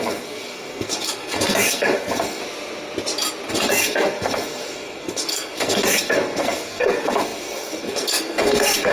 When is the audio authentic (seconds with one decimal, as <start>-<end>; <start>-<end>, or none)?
2.4-3.5